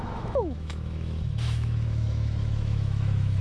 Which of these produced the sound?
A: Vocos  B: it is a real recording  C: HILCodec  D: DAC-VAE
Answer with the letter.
D